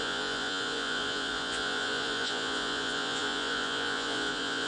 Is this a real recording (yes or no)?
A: no